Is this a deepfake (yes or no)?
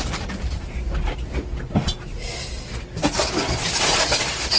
no